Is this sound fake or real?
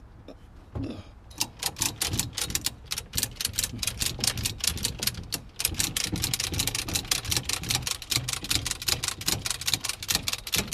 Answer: real